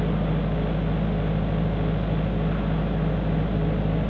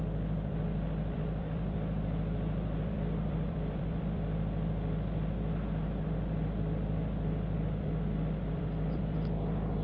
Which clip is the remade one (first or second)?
second